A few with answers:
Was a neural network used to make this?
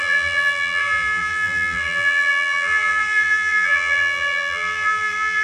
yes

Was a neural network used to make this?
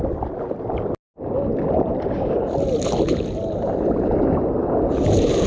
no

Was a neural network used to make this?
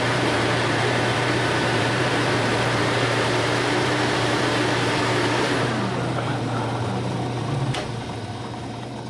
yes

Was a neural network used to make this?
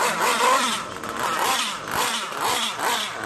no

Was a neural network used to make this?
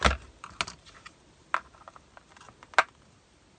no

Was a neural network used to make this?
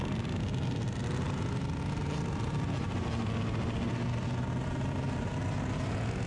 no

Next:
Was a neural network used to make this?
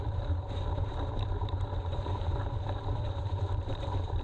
yes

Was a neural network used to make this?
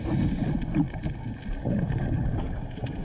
no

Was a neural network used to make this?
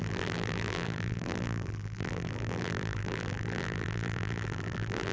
yes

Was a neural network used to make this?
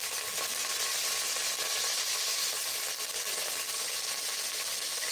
no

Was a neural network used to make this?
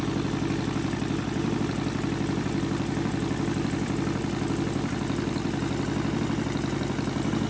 no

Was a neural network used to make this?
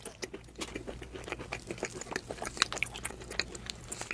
no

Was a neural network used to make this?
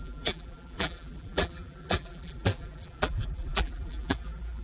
yes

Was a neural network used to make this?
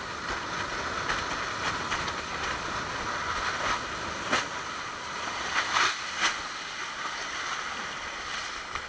no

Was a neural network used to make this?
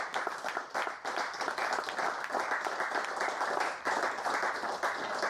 yes